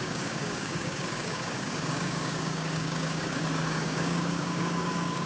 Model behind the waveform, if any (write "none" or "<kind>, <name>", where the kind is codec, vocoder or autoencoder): codec, DAC